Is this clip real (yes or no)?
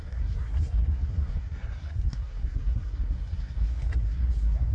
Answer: no